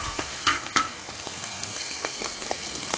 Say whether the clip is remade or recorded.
remade